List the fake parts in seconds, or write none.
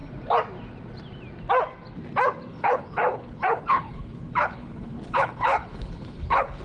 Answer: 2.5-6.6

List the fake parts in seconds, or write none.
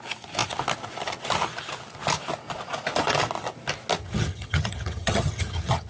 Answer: 4.0-5.9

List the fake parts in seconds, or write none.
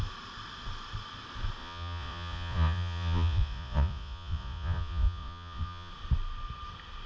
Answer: 1.6-5.9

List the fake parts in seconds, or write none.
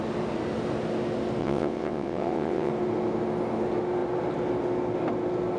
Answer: 1.4-2.7